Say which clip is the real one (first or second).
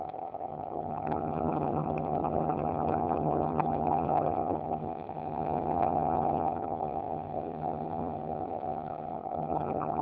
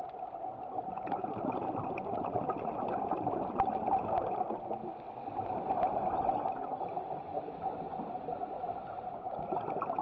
second